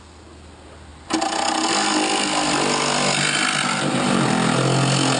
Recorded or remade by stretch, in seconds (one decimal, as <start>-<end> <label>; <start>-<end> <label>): 0.0-5.2 recorded